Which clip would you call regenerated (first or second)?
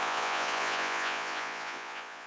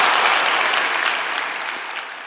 first